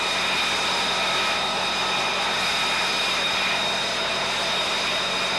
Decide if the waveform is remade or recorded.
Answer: recorded